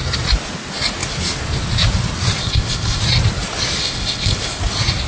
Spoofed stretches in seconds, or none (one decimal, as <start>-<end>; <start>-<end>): 2.4-3.0; 3.8-4.6